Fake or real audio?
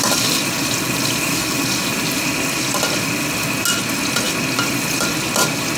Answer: real